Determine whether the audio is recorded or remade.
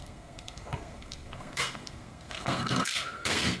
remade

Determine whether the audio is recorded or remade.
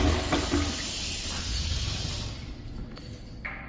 recorded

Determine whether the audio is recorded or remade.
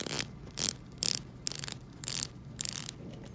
recorded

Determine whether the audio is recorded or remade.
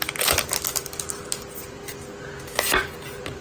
recorded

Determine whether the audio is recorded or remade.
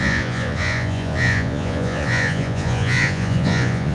remade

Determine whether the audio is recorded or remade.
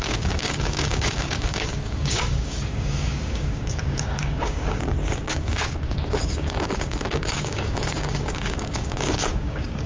remade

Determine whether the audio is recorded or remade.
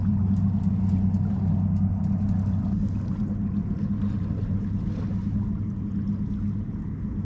recorded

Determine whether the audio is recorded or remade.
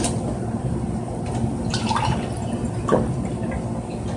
remade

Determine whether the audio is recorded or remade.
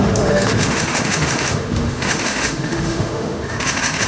remade